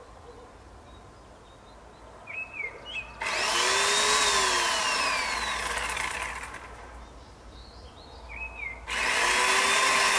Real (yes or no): yes